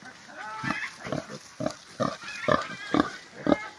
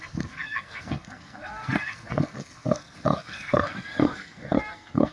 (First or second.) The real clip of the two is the first